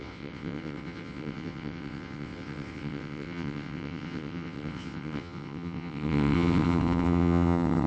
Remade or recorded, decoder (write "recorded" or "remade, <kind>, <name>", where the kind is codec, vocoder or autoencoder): remade, vocoder, WaveNeXt